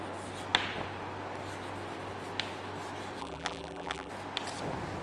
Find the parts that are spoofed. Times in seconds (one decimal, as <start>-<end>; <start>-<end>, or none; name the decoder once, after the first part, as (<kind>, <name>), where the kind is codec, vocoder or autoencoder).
3.2-4.1 (vocoder, BigVGAN v2)